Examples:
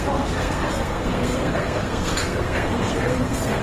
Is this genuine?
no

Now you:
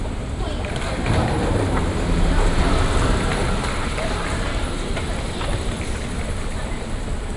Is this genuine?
no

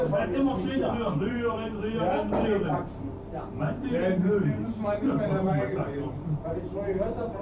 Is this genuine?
no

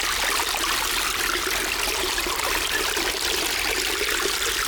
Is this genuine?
yes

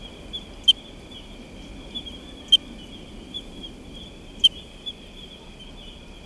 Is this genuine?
yes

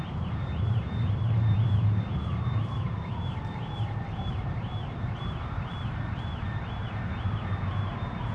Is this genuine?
no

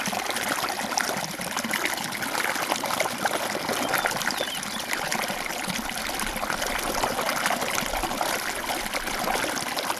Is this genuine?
yes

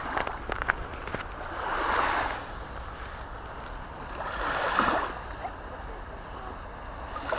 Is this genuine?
yes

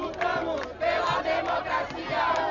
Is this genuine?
yes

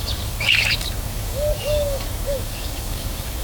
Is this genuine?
no